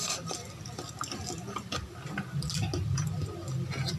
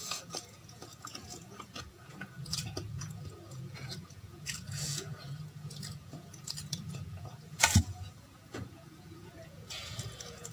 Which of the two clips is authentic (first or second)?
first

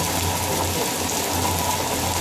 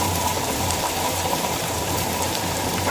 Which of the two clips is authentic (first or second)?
first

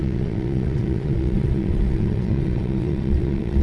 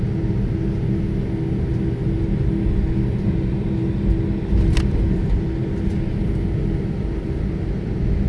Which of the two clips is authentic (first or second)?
second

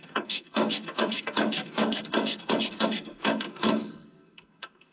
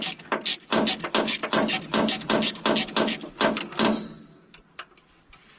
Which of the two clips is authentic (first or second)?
second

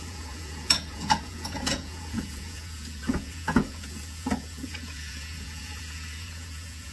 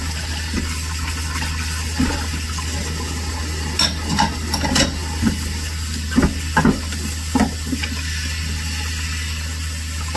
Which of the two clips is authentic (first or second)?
second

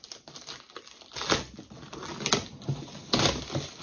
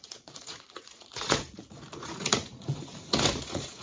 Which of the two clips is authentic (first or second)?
first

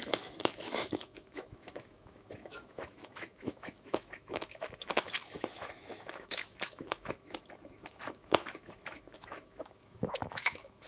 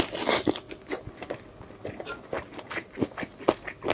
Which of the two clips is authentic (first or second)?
second